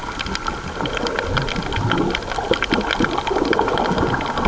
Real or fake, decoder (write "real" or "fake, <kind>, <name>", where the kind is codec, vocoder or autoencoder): real